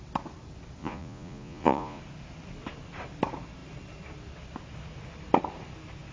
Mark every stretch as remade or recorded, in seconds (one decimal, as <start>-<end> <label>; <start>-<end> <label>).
0.0-0.8 recorded; 0.8-2.0 remade; 2.0-6.1 recorded